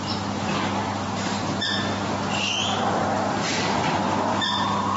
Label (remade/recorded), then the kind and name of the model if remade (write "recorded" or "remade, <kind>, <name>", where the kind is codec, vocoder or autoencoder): remade, vocoder, BigVGAN v2